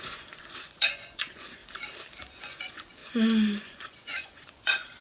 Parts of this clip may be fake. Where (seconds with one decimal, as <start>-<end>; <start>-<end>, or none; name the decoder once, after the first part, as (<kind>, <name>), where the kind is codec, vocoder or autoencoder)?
0.0-1.6 (vocoder, Vocos); 2.2-5.0